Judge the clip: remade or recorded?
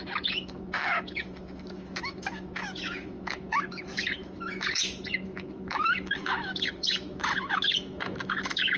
remade